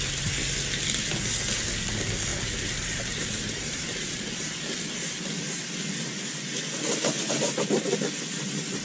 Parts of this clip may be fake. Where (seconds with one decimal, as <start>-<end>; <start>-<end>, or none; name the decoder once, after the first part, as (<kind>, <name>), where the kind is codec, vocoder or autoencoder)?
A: 2.3-4.1 (vocoder, BigVGAN v2)